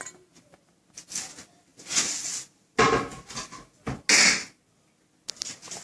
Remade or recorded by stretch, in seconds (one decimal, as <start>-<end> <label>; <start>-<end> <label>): 0.0-5.8 recorded